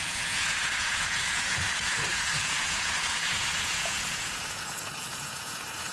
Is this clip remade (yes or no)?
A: yes